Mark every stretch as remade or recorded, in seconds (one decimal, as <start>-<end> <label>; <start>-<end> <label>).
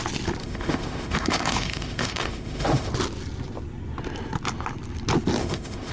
0.0-0.4 recorded; 0.4-2.9 remade; 2.9-5.4 recorded; 5.4-5.9 remade